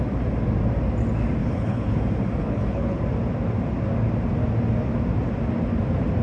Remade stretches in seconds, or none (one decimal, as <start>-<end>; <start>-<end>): 1.4-2.0; 2.4-3.0